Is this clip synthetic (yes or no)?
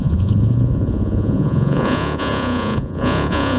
yes